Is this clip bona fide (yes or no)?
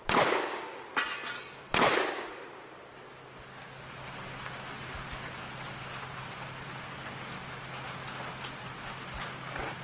yes